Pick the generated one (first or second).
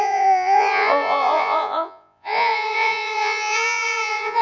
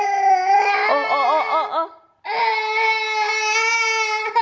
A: first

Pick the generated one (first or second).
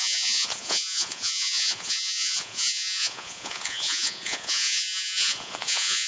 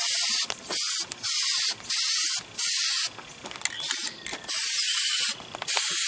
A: first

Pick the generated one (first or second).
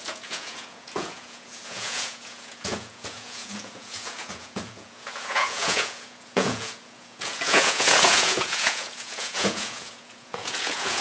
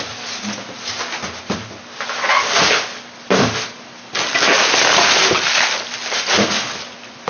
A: first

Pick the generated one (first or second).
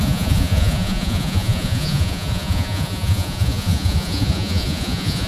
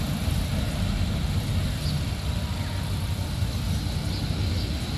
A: first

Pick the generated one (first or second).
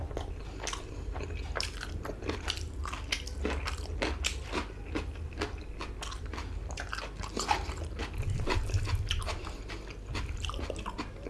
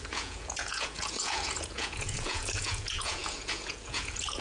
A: second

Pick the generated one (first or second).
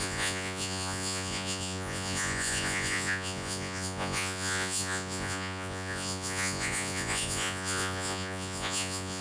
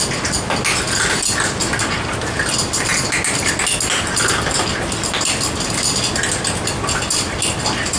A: first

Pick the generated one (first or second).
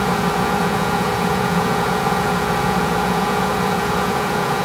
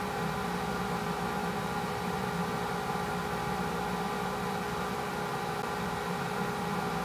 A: first